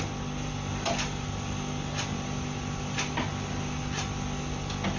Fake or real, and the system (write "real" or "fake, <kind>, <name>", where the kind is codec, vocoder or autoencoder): real